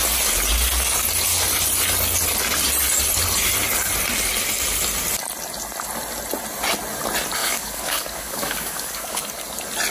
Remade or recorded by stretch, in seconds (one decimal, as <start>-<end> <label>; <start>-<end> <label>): 0.0-7.4 recorded; 7.4-9.3 remade; 9.3-9.9 recorded